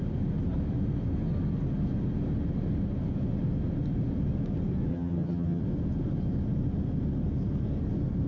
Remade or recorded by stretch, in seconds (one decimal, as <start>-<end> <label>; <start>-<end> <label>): 0.0-4.9 recorded; 4.9-5.6 remade; 5.6-8.3 recorded